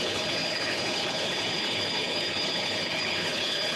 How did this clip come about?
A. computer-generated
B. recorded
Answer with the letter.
A